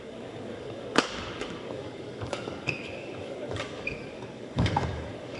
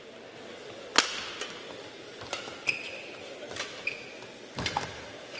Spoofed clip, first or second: first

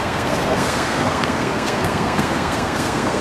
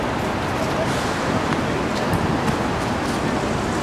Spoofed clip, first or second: first